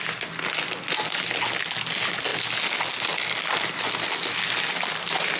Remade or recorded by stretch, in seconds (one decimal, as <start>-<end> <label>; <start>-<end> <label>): 0.0-5.4 recorded